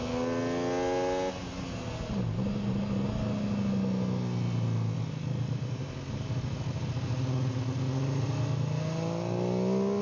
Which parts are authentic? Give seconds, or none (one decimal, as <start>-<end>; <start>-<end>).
0.0-10.0